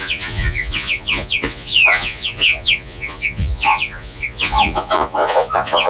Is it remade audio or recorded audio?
remade